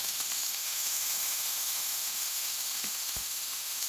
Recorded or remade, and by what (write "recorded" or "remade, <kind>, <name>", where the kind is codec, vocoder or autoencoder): remade, autoencoder, DAC-VAE